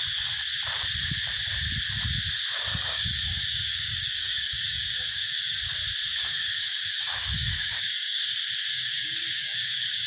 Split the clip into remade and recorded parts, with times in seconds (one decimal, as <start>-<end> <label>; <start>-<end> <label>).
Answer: 0.0-2.7 recorded; 2.7-5.6 remade; 5.6-6.1 recorded; 6.1-8.2 remade; 8.2-8.7 recorded; 8.7-10.1 remade